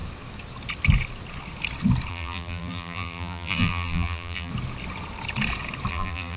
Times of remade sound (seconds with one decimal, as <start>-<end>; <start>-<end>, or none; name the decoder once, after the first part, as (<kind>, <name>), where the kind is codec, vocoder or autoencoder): 2.1-4.5 (vocoder, BigVGAN v2); 5.9-6.4